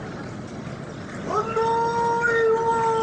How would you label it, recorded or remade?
recorded